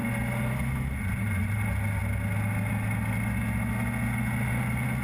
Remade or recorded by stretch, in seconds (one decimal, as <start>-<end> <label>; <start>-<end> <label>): 0.0-1.6 remade; 1.6-5.0 recorded